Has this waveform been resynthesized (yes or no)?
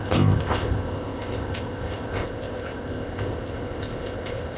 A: yes